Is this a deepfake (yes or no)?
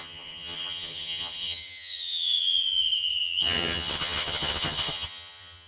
yes